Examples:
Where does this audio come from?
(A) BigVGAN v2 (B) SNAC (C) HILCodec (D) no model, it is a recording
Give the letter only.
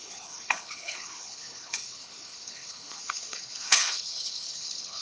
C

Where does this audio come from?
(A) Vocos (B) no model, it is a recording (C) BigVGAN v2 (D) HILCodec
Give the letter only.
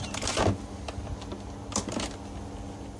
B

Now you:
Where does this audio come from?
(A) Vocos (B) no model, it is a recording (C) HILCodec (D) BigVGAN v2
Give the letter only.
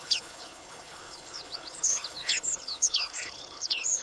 C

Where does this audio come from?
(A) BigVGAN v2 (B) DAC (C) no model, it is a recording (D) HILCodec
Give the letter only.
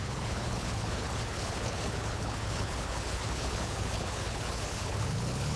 D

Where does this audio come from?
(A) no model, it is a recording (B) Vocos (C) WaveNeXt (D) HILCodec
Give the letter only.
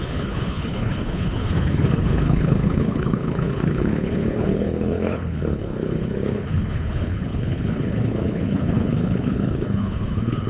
D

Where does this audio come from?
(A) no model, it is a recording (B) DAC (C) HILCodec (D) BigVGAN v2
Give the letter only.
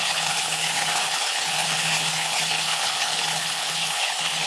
C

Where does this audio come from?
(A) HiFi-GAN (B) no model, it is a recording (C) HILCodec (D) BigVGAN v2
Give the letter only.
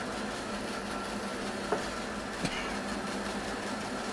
B